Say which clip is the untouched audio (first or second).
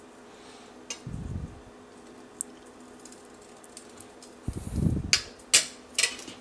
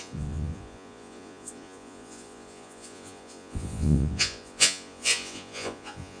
first